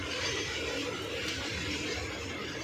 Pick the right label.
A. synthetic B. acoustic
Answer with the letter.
B